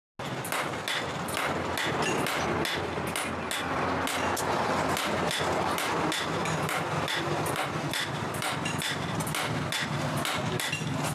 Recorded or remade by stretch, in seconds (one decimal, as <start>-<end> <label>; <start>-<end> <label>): 0.0-6.4 recorded; 6.4-9.3 remade; 9.3-11.1 recorded